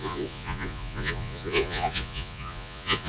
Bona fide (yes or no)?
no